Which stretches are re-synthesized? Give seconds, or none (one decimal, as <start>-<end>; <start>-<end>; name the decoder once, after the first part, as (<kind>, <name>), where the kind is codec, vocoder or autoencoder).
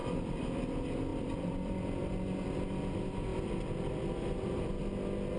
0.0-0.6 (vocoder, BigVGAN v2); 1.1-2.5; 3.3-4.8